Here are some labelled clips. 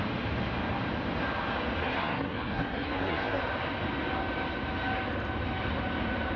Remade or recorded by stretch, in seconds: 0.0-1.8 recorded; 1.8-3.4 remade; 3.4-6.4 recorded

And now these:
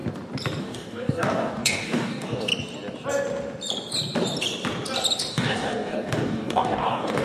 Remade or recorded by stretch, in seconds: 0.0-0.6 recorded; 0.6-2.5 remade; 2.5-5.3 recorded; 5.3-7.2 remade

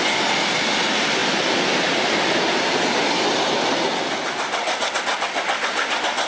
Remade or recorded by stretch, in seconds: 0.0-6.3 recorded

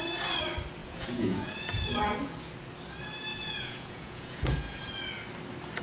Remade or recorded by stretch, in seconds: 0.0-0.8 recorded; 0.8-1.9 remade; 1.9-3.3 recorded; 3.3-4.9 remade; 4.9-5.8 recorded

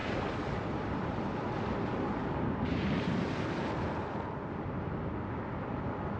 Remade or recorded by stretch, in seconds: 0.0-1.3 remade; 1.3-2.2 recorded; 2.2-3.6 remade; 3.6-6.2 recorded

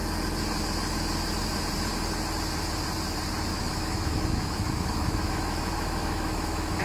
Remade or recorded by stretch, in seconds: 0.0-3.5 recorded; 3.5-6.8 remade

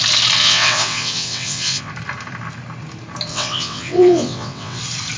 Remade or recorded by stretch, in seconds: 0.0-0.4 recorded; 0.4-1.9 remade; 1.9-3.3 recorded; 3.3-4.8 remade; 4.8-5.2 recorded